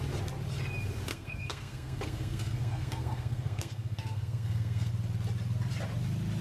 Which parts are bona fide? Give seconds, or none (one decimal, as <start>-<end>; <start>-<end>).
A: 0.0-1.1; 4.9-6.4